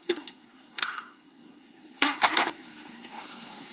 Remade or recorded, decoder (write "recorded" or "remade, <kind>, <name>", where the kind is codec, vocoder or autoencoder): remade, codec, SNAC